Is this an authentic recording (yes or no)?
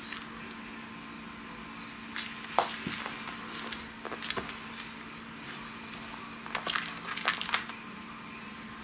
yes